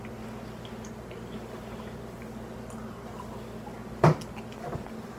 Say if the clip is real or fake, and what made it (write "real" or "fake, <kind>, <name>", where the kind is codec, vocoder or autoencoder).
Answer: real